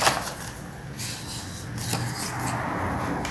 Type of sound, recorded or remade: recorded